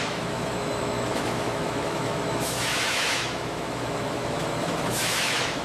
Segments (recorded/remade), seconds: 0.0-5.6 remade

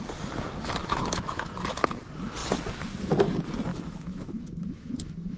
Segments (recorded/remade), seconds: 0.0-0.8 recorded; 0.8-1.5 remade; 1.5-3.7 recorded; 3.7-5.4 remade

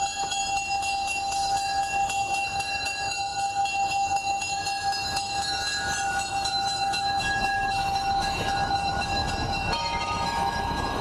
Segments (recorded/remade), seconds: 0.0-11.0 remade